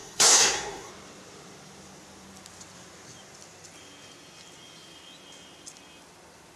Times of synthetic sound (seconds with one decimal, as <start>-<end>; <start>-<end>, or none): 0.0-0.9